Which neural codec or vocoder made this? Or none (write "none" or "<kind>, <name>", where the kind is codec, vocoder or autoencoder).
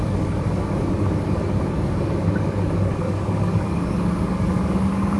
codec, DAC